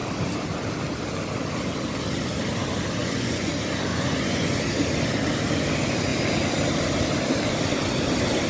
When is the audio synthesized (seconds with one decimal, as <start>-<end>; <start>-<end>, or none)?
3.0-3.5; 3.9-4.6